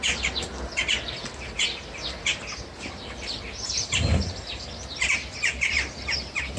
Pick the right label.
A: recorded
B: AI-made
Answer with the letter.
A